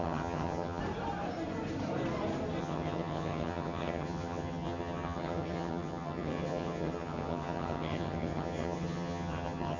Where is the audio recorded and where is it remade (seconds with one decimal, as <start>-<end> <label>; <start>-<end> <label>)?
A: 0.0-0.8 remade; 0.8-2.6 recorded; 2.6-9.8 remade